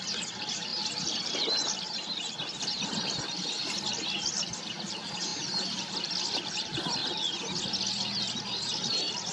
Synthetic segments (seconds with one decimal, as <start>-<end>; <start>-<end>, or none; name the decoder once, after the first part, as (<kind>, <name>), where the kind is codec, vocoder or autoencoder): none